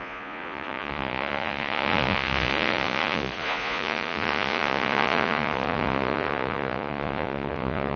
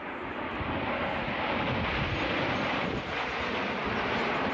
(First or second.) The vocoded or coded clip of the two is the first